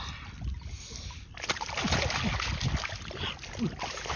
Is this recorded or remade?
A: recorded